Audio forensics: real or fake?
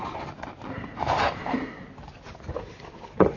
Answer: real